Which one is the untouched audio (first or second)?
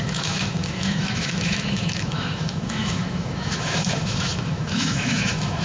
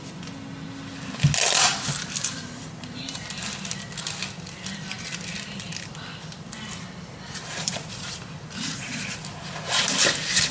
second